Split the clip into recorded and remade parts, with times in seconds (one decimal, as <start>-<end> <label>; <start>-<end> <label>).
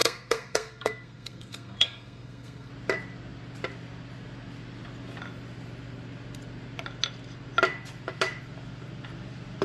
0.0-2.7 remade; 2.7-9.6 recorded